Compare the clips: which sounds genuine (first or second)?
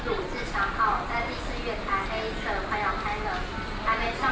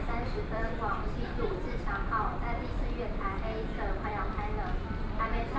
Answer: first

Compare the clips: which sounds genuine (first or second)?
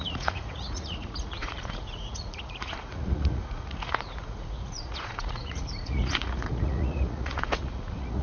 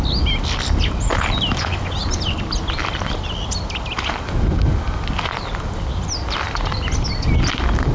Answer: second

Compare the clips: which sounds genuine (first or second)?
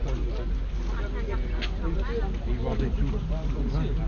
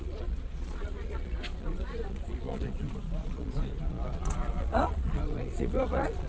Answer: first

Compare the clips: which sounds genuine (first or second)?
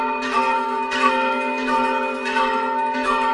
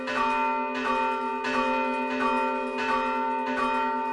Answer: second